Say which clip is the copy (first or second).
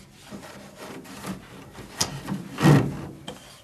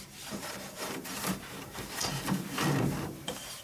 second